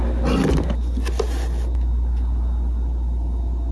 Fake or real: real